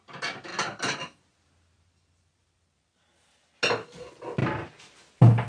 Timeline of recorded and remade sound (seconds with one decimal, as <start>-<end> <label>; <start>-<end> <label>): 0.0-5.5 recorded